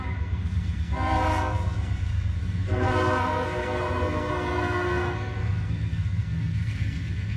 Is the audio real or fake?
fake